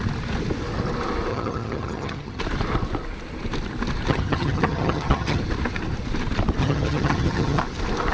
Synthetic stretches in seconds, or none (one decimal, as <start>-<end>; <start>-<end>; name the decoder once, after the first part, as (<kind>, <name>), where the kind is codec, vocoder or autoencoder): 1.3-2.4 (vocoder, HiFi-GAN); 4.1-5.4; 6.6-7.6